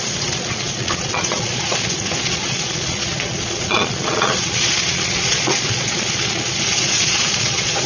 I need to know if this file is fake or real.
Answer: fake